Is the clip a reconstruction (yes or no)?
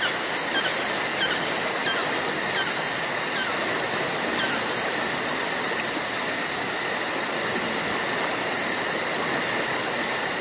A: no